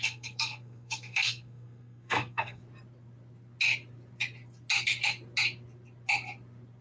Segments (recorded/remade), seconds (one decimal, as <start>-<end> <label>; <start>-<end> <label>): 0.0-2.6 remade; 2.6-6.8 recorded